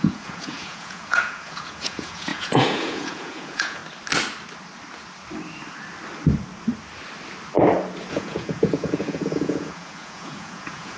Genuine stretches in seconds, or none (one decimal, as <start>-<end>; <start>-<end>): 3.8-8.1

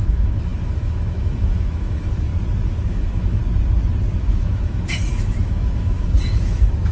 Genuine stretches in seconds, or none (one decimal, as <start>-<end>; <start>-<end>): 2.3-2.9; 3.4-4.2